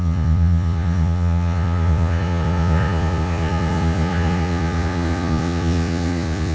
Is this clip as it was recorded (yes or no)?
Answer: no